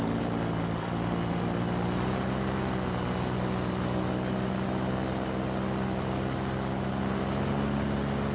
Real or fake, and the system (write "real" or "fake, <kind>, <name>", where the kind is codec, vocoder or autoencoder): real